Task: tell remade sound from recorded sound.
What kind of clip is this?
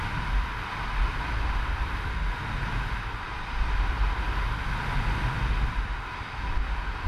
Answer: recorded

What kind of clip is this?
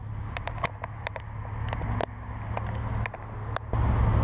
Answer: recorded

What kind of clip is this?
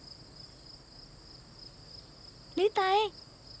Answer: recorded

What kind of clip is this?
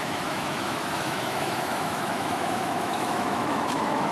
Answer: remade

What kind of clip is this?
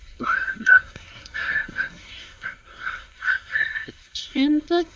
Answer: remade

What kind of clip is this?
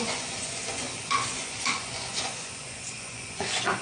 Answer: remade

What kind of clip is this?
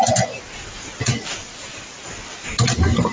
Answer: remade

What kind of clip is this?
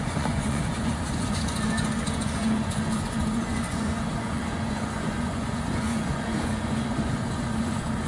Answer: remade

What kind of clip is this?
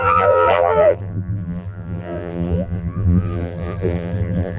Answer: remade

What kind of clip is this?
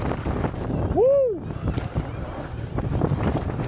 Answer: recorded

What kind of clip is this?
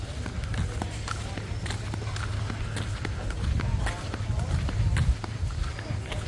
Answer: recorded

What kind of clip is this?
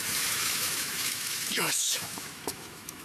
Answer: remade